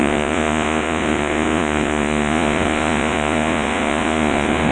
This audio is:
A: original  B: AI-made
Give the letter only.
B